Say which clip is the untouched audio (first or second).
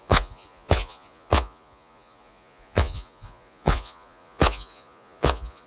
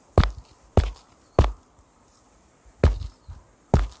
second